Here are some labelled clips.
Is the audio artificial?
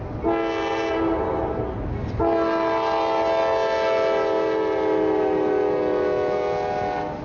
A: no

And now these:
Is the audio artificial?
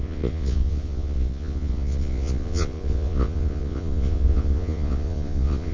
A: yes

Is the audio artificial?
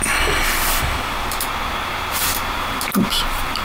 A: no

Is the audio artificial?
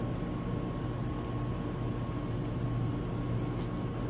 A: no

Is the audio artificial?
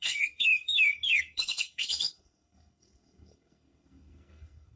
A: yes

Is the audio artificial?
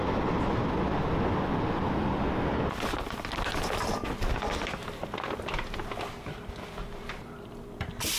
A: no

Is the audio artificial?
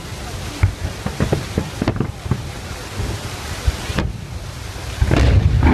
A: no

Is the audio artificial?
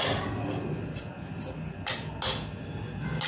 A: no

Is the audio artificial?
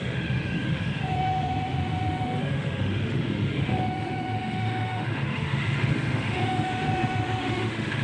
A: yes